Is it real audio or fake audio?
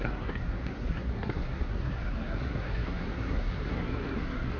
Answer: fake